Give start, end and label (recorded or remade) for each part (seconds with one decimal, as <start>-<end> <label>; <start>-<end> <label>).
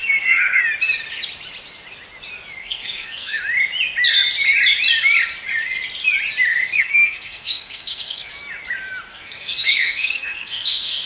0.0-0.6 remade; 0.6-2.6 recorded; 2.6-3.4 remade; 3.4-6.5 recorded; 6.5-8.3 remade; 8.3-9.1 recorded; 9.1-11.1 remade